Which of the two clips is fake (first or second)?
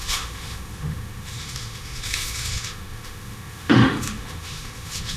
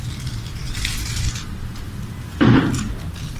first